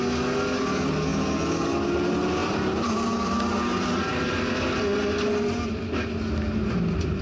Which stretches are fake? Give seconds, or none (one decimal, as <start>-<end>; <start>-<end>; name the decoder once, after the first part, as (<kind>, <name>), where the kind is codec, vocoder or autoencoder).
2.4-3.3 (vocoder, BigVGAN v2)